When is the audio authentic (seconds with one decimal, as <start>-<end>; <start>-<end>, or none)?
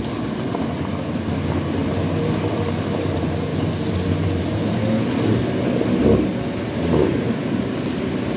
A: 0.0-8.4